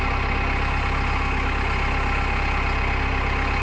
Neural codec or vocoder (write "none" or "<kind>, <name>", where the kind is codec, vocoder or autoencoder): none